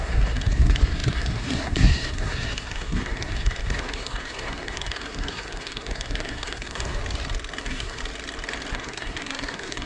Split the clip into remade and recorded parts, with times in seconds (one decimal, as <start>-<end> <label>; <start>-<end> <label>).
0.0-7.0 remade; 7.0-7.6 recorded; 7.6-8.0 remade; 8.0-8.7 recorded; 8.7-9.9 remade